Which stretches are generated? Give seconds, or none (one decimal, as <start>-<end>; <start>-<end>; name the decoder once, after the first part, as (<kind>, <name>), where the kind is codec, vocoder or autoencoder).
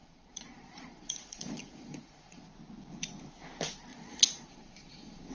0.0-2.4 (vocoder, Vocos); 3.9-5.3